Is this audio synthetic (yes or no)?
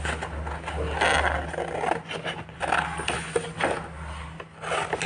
no